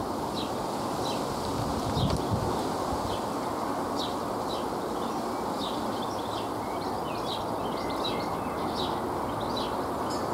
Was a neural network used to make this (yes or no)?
no